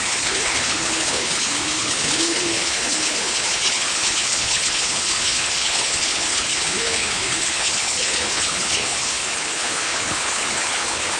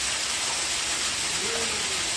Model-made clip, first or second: first